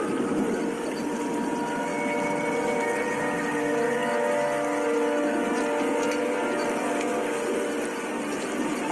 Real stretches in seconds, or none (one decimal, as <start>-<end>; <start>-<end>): 0.0-8.9